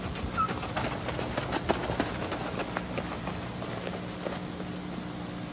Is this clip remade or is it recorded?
recorded